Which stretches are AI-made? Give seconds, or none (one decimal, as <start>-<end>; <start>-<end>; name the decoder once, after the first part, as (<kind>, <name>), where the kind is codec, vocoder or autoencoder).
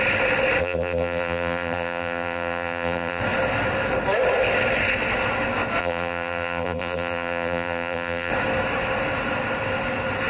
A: 0.6-3.2 (vocoder, BigVGAN v2); 5.8-8.3